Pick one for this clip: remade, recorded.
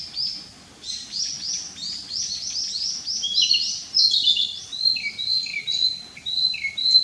recorded